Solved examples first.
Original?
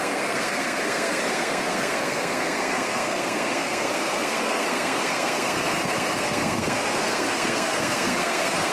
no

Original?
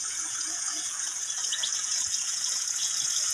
no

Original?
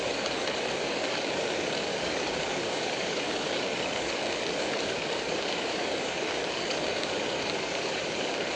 no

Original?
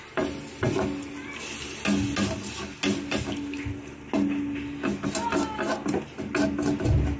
yes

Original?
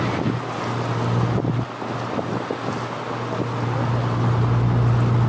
yes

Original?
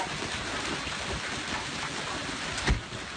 yes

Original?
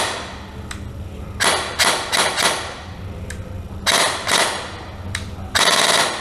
yes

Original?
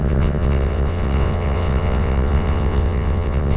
no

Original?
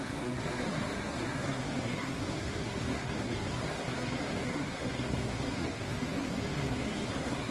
no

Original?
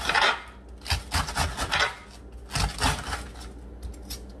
yes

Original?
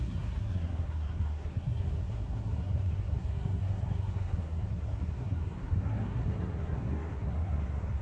no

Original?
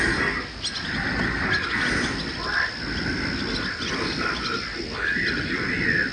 yes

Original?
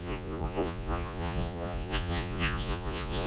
no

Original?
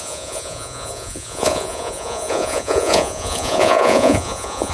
no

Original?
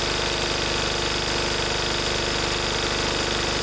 yes